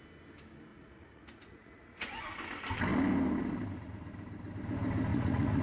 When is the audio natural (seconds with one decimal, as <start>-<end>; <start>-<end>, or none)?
0.0-0.7; 2.2-5.1